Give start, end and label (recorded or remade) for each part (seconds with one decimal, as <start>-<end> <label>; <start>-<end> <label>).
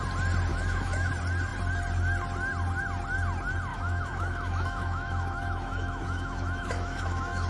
0.0-0.5 recorded; 0.5-1.1 remade; 1.1-3.7 recorded; 3.7-7.5 remade